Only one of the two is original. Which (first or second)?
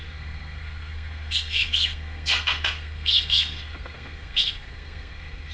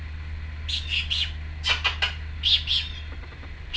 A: second